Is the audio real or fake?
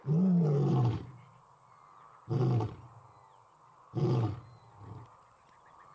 real